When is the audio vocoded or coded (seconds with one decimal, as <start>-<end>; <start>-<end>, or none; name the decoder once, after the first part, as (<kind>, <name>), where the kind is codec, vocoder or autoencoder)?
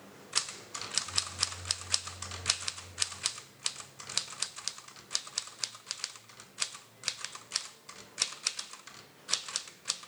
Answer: none